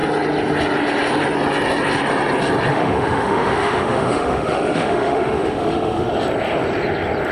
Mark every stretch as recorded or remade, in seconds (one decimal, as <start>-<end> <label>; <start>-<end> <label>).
0.0-2.7 recorded; 2.7-6.1 remade; 6.1-7.3 recorded